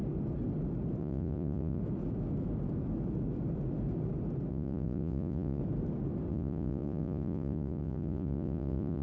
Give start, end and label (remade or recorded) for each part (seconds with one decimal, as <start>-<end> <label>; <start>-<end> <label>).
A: 0.0-1.0 recorded; 1.0-1.8 remade; 1.8-4.5 recorded; 4.5-5.6 remade; 5.6-6.3 recorded; 6.3-9.0 remade